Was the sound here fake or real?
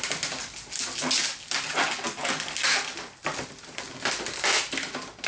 real